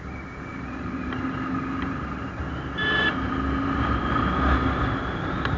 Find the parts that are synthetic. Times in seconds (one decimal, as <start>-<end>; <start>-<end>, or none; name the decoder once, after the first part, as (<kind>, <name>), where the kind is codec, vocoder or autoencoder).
none

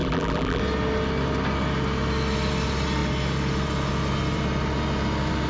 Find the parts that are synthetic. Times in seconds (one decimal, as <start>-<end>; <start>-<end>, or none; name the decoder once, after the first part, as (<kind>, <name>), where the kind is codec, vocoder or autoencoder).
0.0-0.6 (vocoder, BigVGAN v2)

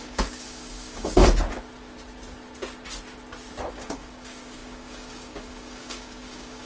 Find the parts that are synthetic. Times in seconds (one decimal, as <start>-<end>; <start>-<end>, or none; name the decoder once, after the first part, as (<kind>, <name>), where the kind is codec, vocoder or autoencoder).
0.0-1.2 (codec, DAC); 3.7-6.7

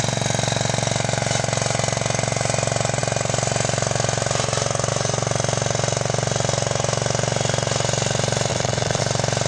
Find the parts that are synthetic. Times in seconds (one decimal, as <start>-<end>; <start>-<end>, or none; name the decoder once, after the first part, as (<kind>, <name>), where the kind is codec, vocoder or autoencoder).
8.5-9.0 (vocoder, Vocos)

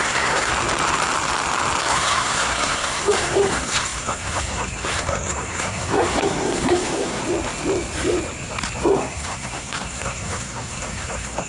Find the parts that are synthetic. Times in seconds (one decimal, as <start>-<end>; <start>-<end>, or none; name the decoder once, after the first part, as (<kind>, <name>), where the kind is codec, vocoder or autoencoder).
0.0-0.5 (codec, SNAC); 1.8-7.2; 8.8-11.5